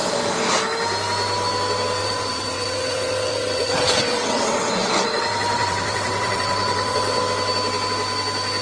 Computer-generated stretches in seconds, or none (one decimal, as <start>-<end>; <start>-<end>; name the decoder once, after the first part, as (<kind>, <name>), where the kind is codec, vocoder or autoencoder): 2.0-7.2 (vocoder, WaveNeXt)